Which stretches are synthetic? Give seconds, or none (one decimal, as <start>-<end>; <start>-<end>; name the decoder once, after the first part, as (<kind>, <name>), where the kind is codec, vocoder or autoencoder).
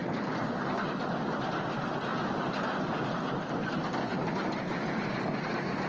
none